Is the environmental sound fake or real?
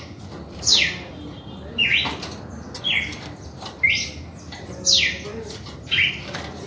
real